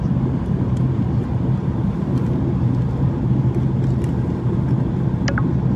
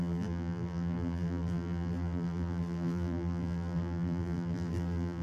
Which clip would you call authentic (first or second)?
first